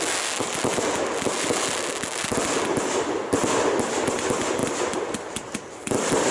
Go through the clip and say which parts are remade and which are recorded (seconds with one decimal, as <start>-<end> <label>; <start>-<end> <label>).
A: 0.0-6.3 recorded